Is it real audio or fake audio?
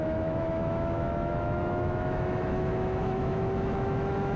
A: fake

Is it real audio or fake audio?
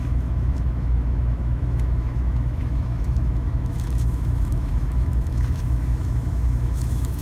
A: fake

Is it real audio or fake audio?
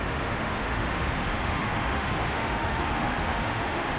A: fake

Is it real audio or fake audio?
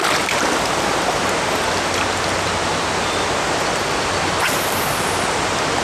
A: real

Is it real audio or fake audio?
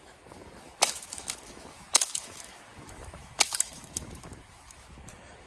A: fake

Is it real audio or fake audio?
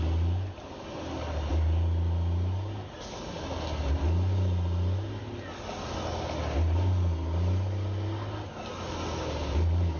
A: real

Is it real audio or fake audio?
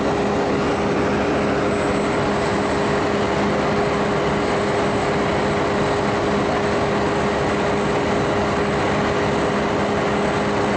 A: real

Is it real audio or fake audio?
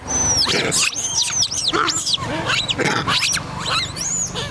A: real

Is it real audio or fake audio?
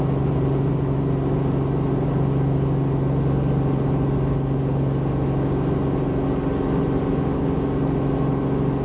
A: real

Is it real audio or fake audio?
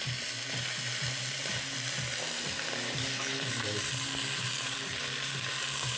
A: real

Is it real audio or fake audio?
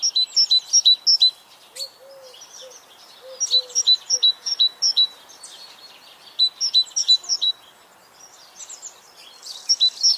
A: real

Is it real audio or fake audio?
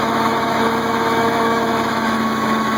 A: fake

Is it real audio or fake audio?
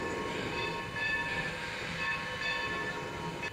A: real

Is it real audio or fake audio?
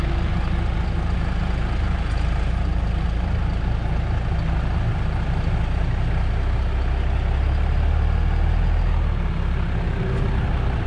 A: real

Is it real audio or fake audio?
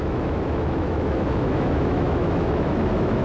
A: fake